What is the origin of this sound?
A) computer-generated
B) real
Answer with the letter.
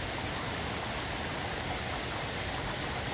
B